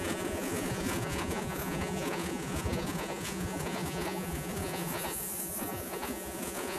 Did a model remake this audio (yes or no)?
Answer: yes